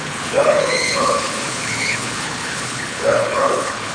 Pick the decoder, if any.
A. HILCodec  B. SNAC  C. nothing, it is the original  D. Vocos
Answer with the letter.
A